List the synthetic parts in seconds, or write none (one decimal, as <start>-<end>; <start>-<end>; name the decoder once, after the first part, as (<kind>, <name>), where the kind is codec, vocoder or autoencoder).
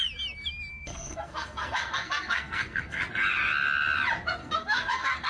0.7-3.0 (codec, SNAC); 4.4-5.3